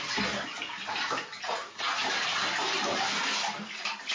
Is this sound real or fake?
real